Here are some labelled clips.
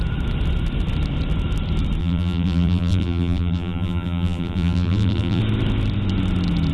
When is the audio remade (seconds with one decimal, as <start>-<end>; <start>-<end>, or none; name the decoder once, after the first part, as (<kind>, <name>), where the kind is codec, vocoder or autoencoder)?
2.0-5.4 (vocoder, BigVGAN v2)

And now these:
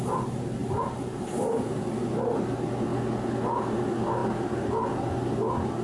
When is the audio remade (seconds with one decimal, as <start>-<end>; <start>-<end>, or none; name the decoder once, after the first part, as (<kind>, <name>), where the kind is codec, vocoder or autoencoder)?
0.6-1.8 (vocoder, BigVGAN v2)

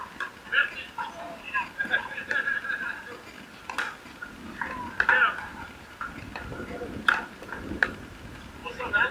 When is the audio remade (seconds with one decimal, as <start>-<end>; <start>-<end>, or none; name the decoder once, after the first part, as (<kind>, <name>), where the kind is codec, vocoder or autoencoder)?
0.5-2.0 (vocoder, BigVGAN v2); 5.5-7.0; 8.6-9.1

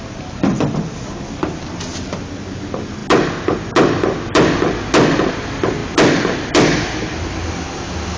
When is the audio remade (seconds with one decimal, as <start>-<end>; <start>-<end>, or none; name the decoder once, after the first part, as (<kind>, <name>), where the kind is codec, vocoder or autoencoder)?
none